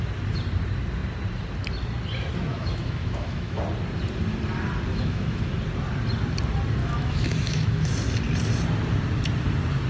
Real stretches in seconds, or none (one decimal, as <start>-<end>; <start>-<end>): 0.0-2.5; 3.6-4.9; 5.5-6.8; 7.9-9.9